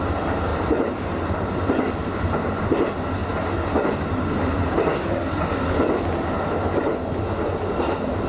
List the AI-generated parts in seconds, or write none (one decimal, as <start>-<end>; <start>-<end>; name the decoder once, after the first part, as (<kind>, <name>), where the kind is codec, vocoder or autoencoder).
0.5-1.6 (vocoder, BigVGAN v2); 2.0-2.6

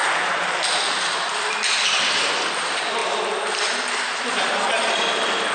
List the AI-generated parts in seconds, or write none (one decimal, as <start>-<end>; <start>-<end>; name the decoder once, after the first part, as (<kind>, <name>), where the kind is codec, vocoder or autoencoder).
0.0-1.5 (vocoder, BigVGAN v2)

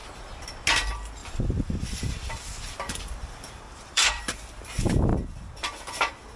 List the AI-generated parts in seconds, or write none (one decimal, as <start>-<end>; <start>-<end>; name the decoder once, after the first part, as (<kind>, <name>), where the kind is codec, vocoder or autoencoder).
1.2-4.2 (vocoder, BigVGAN v2)

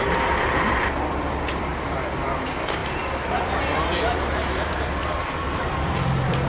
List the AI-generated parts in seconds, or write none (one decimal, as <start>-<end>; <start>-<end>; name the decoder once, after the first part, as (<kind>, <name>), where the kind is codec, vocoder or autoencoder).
0.0-1.7 (vocoder, BigVGAN v2); 2.3-6.5

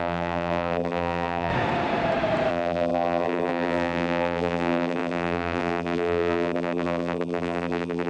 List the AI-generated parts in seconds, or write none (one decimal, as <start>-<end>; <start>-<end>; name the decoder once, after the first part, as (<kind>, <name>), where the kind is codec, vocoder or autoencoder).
0.0-1.5 (vocoder, BigVGAN v2); 2.5-8.1